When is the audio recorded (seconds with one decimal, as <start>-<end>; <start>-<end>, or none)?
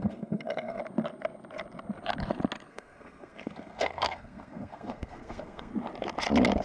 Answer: 0.8-2.7; 5.7-6.6